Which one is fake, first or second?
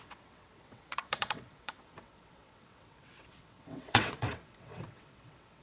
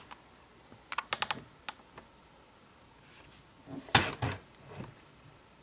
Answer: first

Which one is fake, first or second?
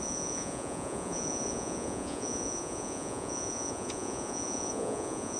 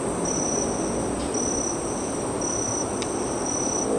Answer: first